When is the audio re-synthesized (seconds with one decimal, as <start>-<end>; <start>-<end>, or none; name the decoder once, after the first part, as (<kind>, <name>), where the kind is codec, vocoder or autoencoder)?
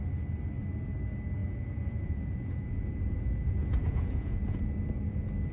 1.4-4.7 (vocoder, Vocos)